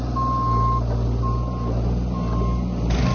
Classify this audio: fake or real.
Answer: real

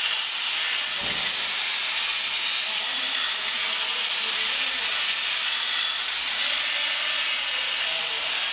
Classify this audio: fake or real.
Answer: real